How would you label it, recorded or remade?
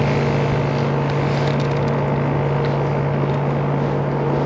recorded